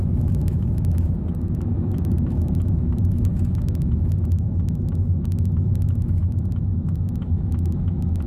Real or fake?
fake